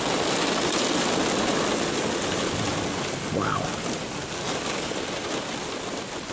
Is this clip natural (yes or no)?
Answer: yes